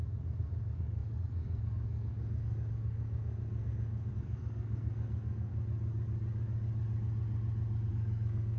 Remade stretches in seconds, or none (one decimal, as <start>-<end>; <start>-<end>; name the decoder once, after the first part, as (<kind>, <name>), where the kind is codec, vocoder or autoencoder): 0.0-5.5 (codec, SNAC); 7.9-8.6